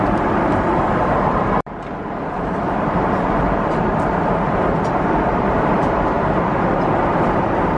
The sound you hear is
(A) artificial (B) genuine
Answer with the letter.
A